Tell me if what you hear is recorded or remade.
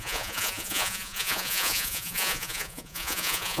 remade